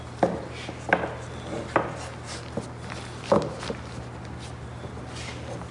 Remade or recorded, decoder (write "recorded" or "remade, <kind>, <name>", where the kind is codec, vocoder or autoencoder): recorded